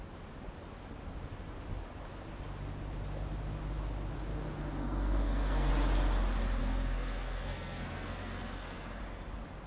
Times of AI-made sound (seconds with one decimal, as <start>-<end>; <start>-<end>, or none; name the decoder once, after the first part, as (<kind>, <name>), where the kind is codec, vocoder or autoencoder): 4.8-5.7 (codec, SNAC); 6.6-9.0